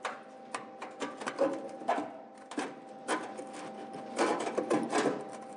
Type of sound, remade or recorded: recorded